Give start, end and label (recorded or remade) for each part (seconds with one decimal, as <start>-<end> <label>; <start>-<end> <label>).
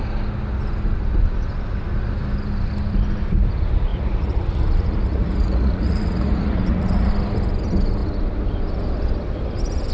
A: 0.0-3.9 recorded; 3.9-7.1 remade; 7.1-9.9 recorded